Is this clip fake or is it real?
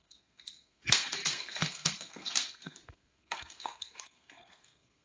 fake